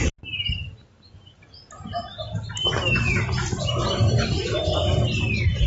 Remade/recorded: recorded